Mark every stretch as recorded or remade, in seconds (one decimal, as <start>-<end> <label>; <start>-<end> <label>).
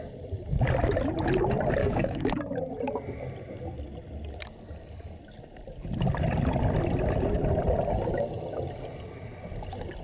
0.0-1.8 recorded; 1.8-2.4 remade; 2.4-10.0 recorded